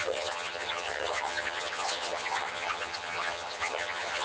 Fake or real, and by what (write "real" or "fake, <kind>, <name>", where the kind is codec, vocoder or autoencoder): fake, vocoder, HiFi-GAN